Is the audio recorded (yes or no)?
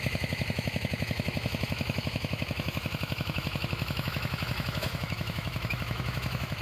no